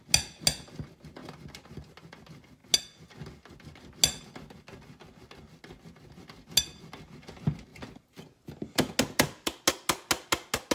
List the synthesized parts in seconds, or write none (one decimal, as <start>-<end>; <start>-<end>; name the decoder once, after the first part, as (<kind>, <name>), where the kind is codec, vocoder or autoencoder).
none